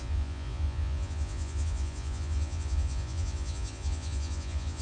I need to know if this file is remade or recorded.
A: remade